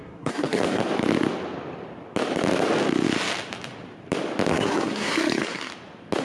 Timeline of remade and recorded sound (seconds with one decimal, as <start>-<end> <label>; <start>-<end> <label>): 0.0-0.8 remade; 0.8-4.5 recorded; 4.5-5.7 remade; 5.7-6.2 recorded